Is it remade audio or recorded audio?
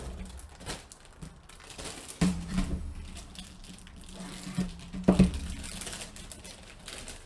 recorded